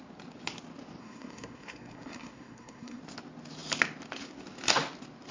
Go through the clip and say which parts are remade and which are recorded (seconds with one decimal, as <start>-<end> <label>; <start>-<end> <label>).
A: 0.0-1.0 recorded; 1.0-3.0 remade; 3.0-5.3 recorded